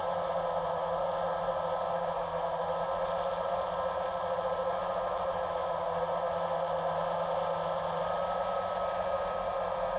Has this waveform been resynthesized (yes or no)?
no